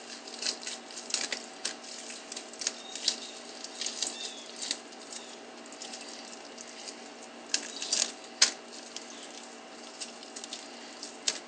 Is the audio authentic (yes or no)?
yes